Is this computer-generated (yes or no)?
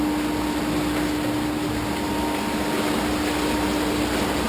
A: no